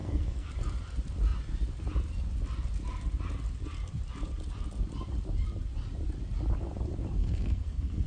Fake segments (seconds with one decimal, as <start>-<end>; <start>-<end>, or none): 0.0-0.5; 7.2-8.1